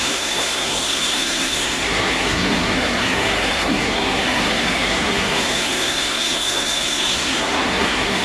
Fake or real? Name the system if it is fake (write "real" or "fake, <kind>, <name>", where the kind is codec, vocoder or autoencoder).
fake, codec, SNAC